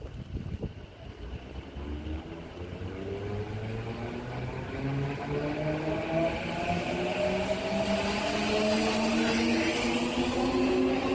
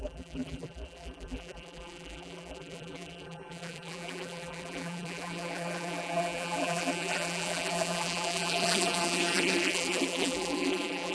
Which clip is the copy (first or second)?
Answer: second